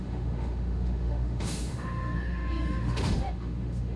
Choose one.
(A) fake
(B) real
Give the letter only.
A